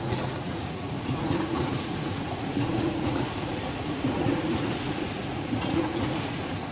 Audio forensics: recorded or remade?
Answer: remade